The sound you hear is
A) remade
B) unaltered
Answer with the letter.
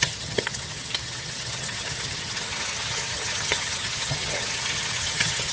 A